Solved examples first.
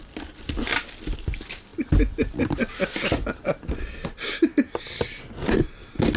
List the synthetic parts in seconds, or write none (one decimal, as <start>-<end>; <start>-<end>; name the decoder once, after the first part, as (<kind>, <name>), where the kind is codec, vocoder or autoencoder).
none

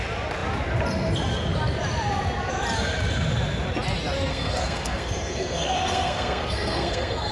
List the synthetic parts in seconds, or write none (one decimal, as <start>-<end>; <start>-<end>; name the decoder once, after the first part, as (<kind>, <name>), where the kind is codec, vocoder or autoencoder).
4.3-7.3 (codec, SNAC)

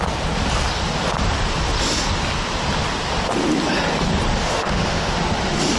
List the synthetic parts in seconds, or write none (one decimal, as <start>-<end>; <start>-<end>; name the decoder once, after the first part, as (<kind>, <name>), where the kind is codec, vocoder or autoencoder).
4.4-5.1 (autoencoder, DAC-VAE)

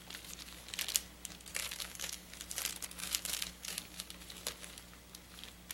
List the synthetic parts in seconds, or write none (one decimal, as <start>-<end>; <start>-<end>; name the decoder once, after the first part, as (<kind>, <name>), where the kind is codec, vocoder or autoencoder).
1.6-2.3 (codec, DAC); 3.0-4.1